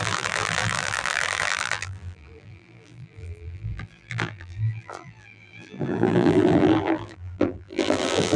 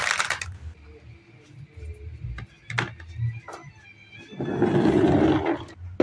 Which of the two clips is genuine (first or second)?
second